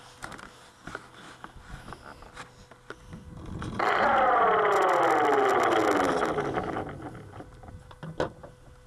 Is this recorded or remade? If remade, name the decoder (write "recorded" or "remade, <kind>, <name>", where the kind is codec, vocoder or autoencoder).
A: recorded